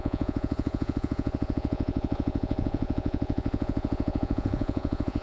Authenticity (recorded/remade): remade